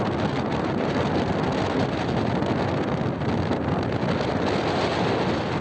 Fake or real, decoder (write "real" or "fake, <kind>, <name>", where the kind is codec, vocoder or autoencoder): real